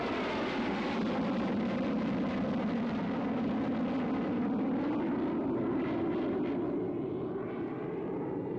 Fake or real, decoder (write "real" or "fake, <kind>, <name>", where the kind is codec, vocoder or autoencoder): real